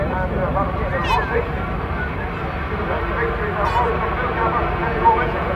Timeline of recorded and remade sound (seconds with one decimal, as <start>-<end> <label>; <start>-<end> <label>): 0.0-4.8 recorded; 4.8-5.6 remade